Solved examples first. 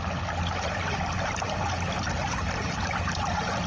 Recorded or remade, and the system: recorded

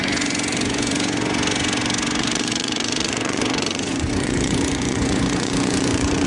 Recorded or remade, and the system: remade, vocoder, Vocos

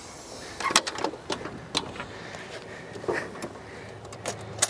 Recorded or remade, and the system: recorded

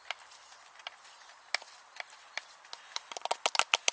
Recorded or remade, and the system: recorded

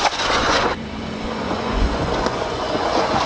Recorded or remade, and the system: remade, vocoder, Vocos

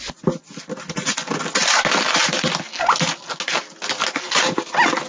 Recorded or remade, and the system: recorded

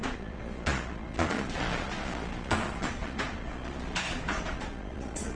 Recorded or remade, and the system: remade, vocoder, Vocos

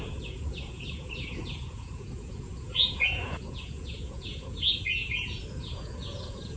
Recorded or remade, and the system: remade, vocoder, Vocos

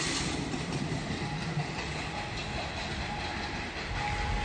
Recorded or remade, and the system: recorded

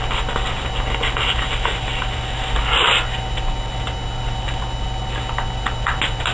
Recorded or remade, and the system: recorded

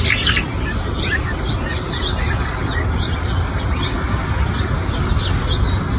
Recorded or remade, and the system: recorded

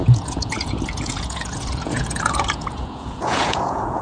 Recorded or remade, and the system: remade, vocoder, Vocos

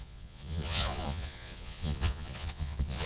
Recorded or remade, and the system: remade, vocoder, Vocos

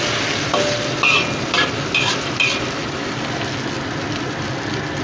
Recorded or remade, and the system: recorded